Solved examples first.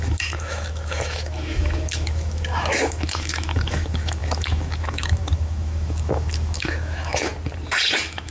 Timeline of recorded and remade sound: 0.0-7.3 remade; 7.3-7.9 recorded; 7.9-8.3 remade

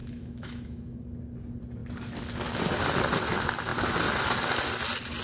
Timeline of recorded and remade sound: 0.0-1.0 remade; 1.0-5.2 recorded